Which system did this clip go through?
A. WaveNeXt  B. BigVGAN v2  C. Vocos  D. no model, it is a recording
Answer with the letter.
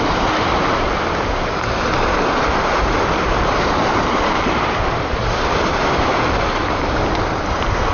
B